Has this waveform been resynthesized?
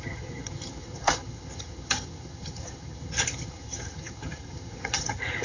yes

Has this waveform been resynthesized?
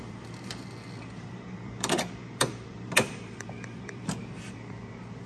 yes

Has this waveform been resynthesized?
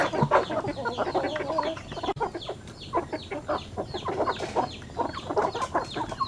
no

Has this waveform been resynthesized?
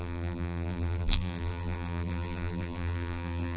yes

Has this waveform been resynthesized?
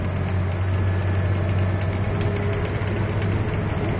no